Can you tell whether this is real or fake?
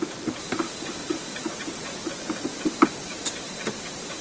real